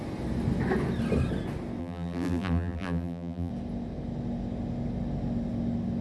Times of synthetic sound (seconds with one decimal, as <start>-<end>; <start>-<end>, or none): 1.8-3.5